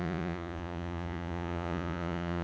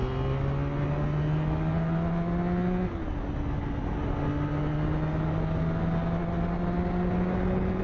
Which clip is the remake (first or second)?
first